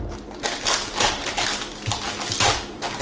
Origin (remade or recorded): recorded